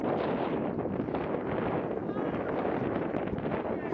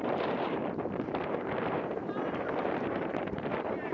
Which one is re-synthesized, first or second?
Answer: second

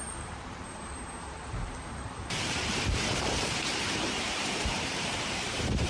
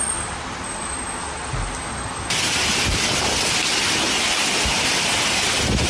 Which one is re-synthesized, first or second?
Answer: first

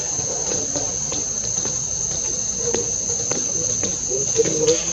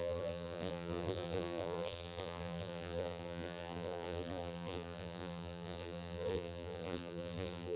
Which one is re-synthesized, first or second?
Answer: second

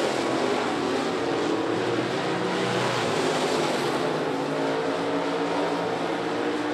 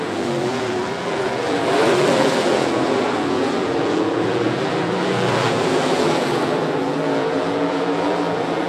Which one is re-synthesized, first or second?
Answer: second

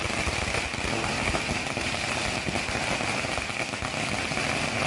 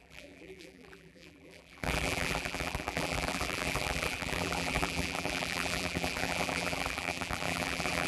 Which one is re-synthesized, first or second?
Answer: second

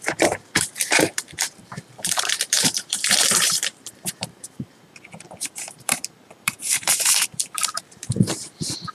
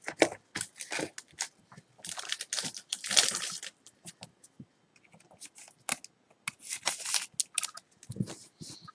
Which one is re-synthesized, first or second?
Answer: first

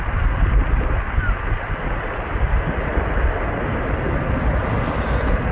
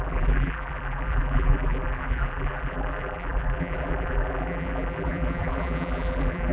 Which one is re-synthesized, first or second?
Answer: second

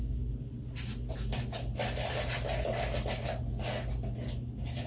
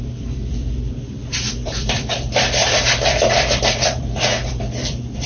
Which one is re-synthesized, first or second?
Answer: second